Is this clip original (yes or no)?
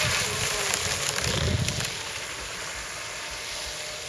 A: yes